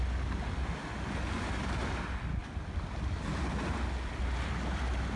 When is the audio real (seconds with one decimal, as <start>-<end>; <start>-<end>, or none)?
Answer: 0.0-5.2